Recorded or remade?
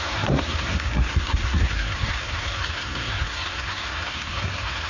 remade